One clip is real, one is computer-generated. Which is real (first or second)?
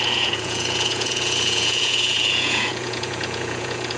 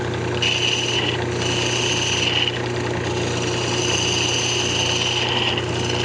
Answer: second